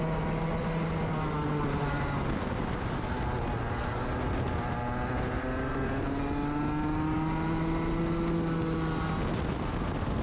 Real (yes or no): yes